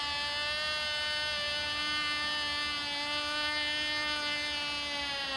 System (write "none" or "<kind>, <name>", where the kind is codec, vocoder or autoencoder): none